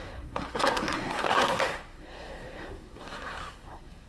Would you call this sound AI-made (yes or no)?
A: yes